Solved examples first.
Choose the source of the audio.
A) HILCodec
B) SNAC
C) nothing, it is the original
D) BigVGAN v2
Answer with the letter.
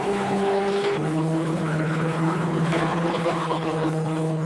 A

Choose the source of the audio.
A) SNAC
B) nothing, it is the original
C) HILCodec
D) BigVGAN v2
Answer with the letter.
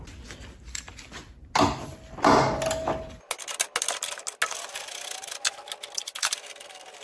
B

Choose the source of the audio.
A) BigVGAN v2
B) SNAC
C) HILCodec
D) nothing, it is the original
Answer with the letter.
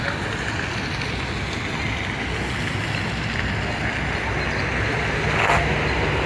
D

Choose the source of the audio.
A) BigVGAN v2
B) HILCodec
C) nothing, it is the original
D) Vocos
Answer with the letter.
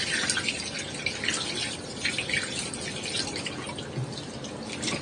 C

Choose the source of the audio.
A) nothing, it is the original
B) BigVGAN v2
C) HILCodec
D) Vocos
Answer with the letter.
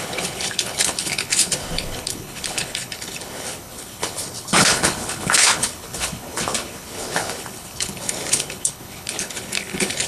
C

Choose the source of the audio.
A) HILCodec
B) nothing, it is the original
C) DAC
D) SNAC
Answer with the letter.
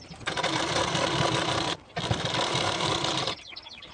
B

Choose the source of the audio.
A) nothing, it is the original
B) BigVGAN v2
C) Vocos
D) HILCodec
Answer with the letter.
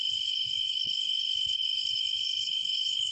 D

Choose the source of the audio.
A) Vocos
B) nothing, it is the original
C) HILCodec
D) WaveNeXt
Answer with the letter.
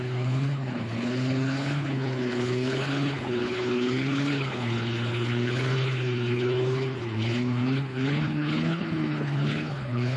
C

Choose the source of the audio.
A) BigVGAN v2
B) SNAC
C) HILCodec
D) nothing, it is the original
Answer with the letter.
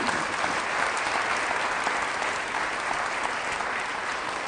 D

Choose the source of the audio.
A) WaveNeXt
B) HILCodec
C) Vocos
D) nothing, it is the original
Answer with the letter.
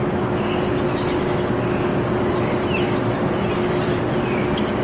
D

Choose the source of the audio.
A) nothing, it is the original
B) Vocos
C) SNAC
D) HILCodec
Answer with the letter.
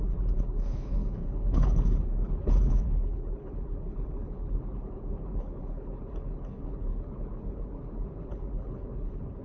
D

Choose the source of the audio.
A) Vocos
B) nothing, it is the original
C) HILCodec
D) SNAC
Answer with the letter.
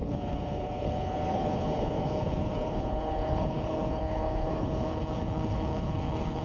C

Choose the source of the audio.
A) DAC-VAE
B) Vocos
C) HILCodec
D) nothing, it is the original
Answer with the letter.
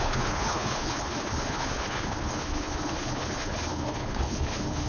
C